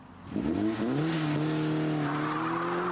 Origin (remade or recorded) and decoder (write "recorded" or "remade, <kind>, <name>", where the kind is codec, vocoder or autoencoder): recorded